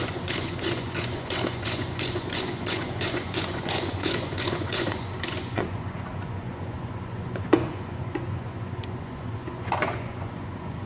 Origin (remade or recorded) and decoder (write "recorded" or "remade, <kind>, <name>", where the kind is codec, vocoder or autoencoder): remade, vocoder, Vocos